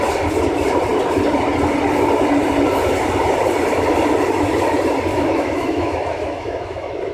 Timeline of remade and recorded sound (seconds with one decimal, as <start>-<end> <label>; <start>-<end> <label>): 0.0-5.1 recorded; 5.1-7.1 remade